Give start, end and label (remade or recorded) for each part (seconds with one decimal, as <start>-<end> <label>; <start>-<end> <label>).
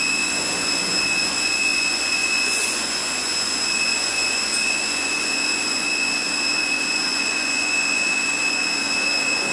0.0-9.5 remade